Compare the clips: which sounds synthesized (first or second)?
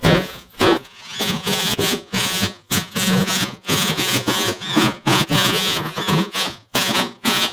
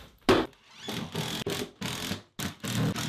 first